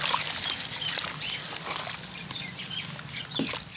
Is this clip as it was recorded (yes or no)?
yes